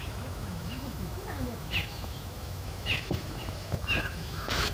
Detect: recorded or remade remade